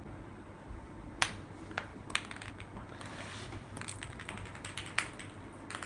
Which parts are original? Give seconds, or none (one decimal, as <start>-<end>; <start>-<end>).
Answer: 0.0-5.9

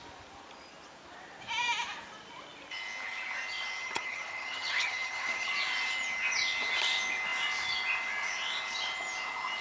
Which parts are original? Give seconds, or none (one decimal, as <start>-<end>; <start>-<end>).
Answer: 0.0-3.8; 5.5-9.6

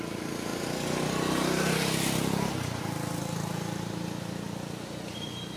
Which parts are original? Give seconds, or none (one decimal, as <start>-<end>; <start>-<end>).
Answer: 0.0-5.6

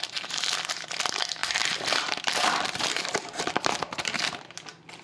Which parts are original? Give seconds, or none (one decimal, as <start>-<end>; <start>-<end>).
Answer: 0.0-1.4; 4.4-5.0

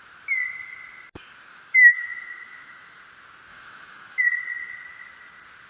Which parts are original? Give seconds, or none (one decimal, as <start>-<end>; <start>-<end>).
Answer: 0.0-1.5; 3.0-3.5; 4.2-5.7

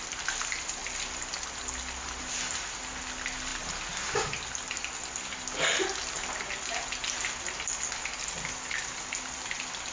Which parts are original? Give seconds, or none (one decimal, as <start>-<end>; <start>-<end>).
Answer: 0.0-9.9